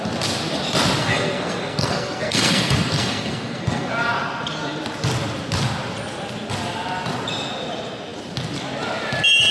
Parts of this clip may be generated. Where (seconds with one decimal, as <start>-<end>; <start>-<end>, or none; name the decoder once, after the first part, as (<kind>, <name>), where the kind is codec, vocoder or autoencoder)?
1.0-3.9 (codec, SNAC)